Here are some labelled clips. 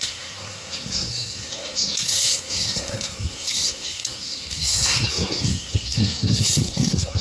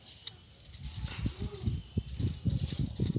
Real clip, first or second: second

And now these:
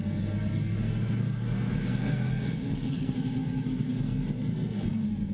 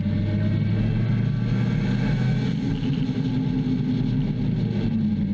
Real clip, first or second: second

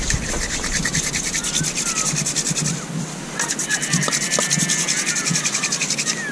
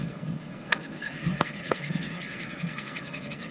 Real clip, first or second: first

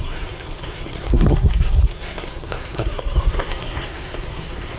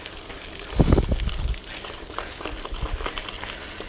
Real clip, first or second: second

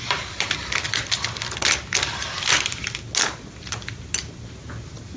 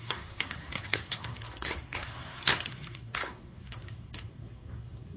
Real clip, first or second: first